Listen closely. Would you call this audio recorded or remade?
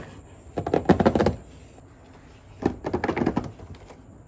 recorded